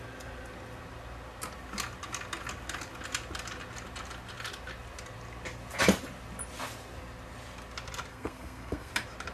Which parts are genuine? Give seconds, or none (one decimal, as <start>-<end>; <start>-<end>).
0.0-8.1; 8.9-9.3